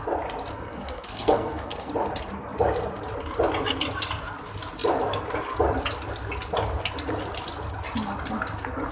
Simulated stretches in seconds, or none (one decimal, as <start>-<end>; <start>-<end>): 0.5-1.9